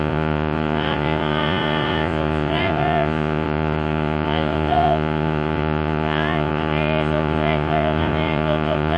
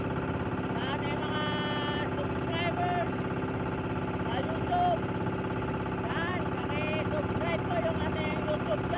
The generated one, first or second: first